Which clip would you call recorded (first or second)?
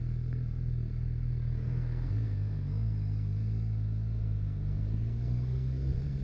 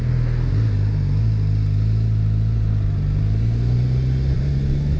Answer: second